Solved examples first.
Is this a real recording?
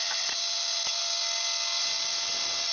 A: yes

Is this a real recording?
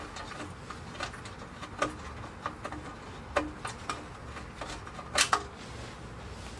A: yes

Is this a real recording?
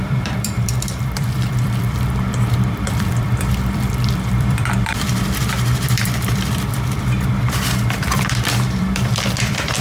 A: no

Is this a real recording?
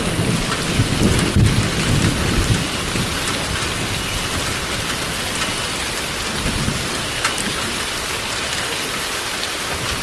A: yes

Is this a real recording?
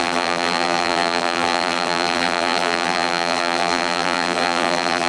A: no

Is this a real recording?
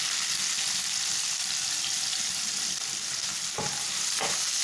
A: yes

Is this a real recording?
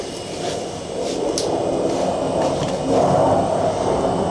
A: yes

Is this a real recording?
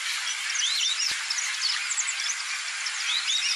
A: yes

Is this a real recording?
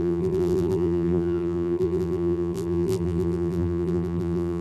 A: no